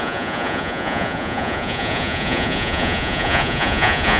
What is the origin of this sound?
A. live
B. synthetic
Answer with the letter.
B